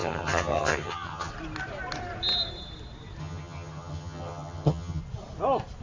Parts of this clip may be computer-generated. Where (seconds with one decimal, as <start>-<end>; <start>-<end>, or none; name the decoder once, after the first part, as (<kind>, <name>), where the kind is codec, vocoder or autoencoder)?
0.0-1.3 (vocoder, HiFi-GAN); 3.2-5.0